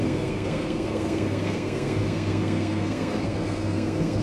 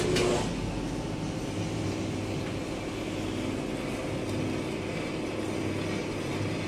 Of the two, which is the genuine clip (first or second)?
second